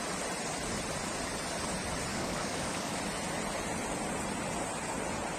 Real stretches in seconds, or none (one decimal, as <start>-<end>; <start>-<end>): 0.0-2.1; 3.0-5.4